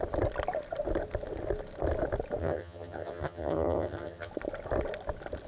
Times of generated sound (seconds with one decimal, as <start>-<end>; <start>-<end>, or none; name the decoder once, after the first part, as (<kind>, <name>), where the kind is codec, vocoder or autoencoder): 2.4-4.3 (vocoder, HiFi-GAN)